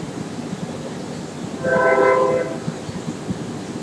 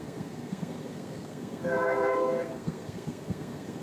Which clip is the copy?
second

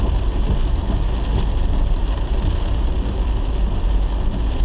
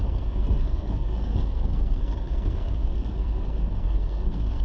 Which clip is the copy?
second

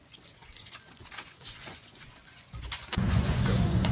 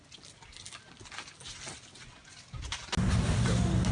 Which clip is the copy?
first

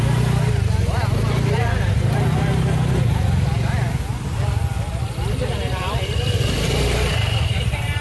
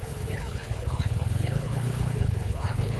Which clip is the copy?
second